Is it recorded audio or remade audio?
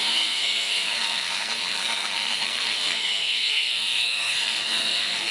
remade